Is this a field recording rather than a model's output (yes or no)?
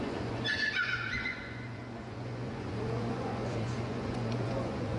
no